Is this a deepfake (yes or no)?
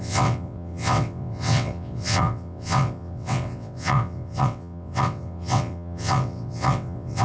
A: yes